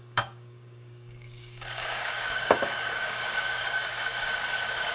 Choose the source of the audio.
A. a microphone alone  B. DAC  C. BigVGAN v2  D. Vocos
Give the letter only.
B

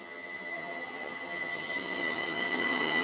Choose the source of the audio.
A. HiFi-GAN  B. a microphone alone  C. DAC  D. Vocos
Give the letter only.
A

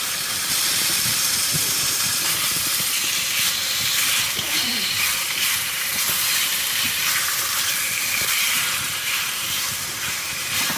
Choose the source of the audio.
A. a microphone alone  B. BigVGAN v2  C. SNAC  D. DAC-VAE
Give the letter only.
B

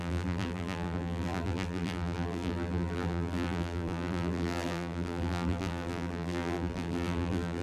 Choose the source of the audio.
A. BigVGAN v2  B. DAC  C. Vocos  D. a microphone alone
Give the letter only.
A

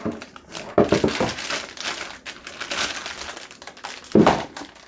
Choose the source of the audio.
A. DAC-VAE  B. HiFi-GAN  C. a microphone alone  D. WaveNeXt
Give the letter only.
C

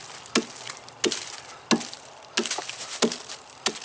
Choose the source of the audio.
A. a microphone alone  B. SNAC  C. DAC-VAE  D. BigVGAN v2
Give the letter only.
A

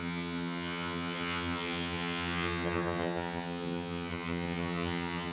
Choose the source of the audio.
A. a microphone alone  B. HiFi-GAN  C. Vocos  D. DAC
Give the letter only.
B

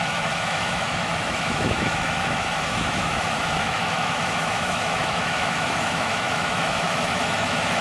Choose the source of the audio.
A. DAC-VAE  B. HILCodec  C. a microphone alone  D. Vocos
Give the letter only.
A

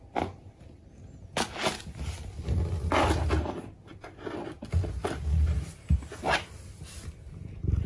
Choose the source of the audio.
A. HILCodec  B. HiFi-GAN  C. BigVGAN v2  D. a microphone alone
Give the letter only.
D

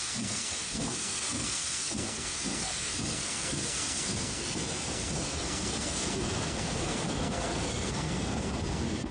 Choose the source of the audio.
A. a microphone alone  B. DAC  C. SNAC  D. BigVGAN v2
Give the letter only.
C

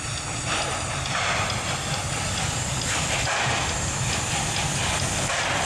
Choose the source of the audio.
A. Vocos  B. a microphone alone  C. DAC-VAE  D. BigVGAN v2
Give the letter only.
B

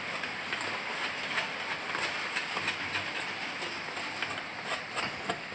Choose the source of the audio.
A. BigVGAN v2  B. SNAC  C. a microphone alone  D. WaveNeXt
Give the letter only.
A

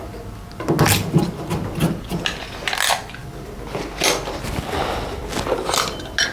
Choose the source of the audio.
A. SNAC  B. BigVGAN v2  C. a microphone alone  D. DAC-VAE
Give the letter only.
C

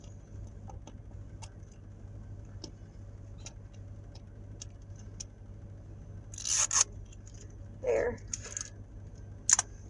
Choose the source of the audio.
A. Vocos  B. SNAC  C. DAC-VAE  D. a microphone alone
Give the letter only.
D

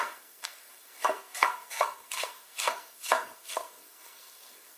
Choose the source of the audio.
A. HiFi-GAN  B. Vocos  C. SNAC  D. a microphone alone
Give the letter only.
C